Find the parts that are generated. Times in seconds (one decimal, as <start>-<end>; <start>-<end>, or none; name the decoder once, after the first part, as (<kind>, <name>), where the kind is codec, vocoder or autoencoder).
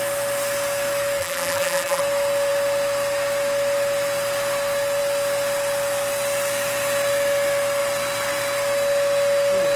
1.2-2.0 (vocoder, BigVGAN v2)